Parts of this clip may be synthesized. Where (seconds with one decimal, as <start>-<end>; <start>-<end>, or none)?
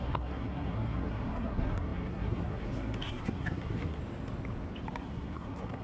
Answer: 0.0-4.0; 5.0-5.8